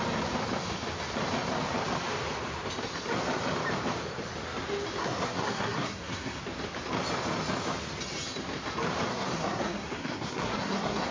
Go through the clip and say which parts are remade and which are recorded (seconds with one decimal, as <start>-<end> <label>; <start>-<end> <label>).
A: 0.0-5.0 recorded; 5.0-6.4 remade; 6.4-9.1 recorded; 9.1-11.1 remade